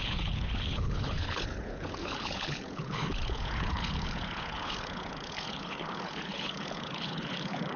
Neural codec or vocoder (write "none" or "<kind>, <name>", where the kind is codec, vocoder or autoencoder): codec, HILCodec